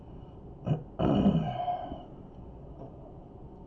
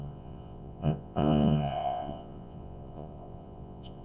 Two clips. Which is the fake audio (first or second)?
second